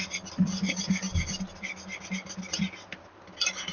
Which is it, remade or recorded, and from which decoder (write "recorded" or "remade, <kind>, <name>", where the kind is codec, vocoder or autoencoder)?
recorded